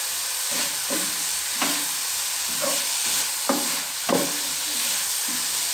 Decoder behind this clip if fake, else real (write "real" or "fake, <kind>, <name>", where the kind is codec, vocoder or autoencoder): real